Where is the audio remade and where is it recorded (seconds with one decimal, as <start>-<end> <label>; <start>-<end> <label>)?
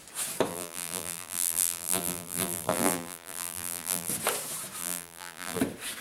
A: 0.0-0.5 recorded; 0.5-4.1 remade; 4.1-4.8 recorded; 4.8-5.6 remade; 5.6-6.0 recorded